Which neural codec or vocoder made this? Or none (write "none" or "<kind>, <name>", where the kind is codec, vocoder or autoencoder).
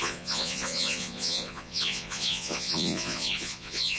vocoder, Vocos